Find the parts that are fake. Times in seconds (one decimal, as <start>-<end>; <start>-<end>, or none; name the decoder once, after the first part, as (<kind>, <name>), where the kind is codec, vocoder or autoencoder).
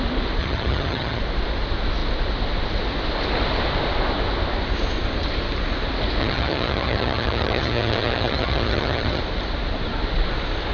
0.4-1.2 (vocoder, HiFi-GAN); 6.2-9.2